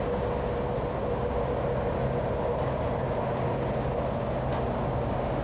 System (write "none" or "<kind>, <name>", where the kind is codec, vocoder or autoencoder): none